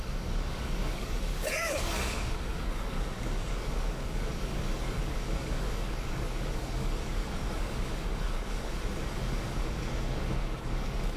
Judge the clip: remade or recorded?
remade